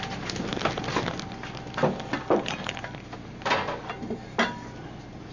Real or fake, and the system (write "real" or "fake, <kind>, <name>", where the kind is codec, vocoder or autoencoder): real